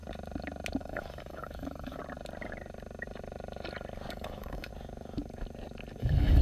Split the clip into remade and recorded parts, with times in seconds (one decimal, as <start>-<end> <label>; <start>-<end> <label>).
0.0-0.8 recorded; 0.8-2.0 remade; 2.0-4.1 recorded; 4.1-4.7 remade; 4.7-6.0 recorded; 6.0-6.4 remade